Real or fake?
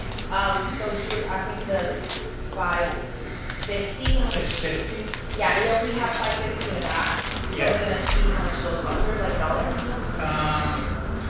real